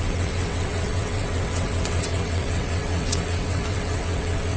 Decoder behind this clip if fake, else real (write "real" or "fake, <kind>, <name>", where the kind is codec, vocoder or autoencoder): fake, vocoder, WaveNeXt